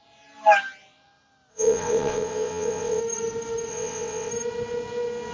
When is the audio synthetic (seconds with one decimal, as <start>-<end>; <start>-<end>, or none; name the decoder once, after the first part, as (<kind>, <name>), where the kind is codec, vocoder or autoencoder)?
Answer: 1.5-3.0 (vocoder, WaveNeXt); 3.7-4.3